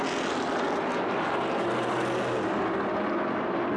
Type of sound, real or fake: real